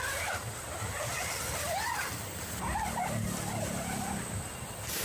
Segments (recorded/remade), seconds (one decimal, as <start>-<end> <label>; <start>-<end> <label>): 0.0-5.0 recorded